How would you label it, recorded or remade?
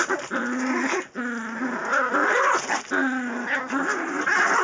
recorded